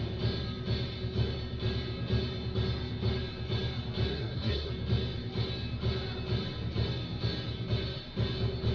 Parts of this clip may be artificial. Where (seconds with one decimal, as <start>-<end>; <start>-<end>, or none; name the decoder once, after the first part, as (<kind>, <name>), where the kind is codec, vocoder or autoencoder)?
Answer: 4.1-4.7 (codec, SNAC)